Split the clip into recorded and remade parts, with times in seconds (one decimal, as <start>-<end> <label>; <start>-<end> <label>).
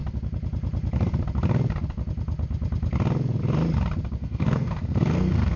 0.0-4.2 recorded; 4.2-5.6 remade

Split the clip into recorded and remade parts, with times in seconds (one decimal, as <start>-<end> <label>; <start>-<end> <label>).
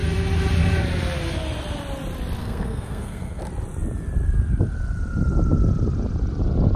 0.0-2.4 recorded; 2.4-3.4 remade; 3.4-6.8 recorded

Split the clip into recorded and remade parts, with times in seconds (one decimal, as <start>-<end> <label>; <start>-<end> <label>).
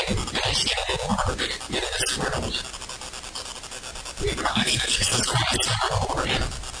0.0-4.5 recorded; 4.5-5.2 remade; 5.2-6.8 recorded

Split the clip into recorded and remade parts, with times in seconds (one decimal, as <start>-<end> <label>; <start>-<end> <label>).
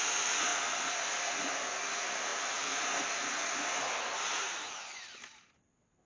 0.0-6.1 recorded